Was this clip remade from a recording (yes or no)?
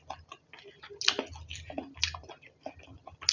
no